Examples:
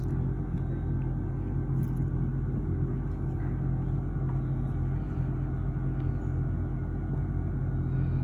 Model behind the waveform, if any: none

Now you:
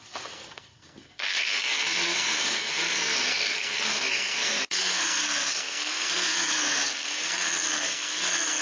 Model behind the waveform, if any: codec, SNAC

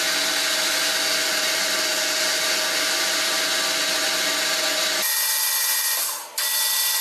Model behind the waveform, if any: none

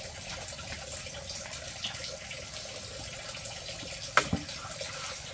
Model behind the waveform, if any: none